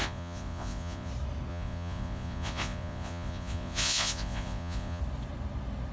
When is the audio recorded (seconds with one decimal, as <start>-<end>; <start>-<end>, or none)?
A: 1.1-1.5; 5.0-5.9